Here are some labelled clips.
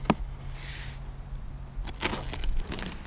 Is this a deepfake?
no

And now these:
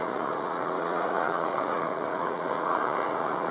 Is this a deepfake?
yes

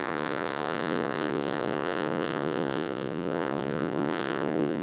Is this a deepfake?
yes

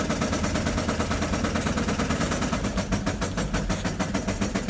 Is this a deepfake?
no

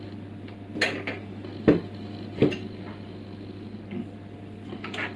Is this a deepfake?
no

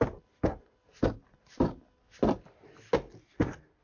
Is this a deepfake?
no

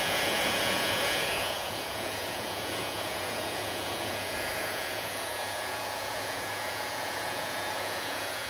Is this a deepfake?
yes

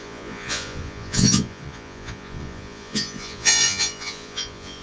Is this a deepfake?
yes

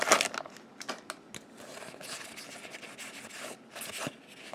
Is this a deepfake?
no